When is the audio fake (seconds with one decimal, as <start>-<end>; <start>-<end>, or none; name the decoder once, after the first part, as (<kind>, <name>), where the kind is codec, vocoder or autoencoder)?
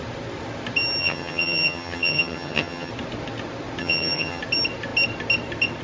1.0-2.9 (vocoder, HiFi-GAN); 3.8-4.4